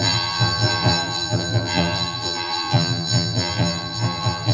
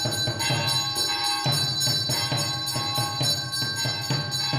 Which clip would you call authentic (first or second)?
second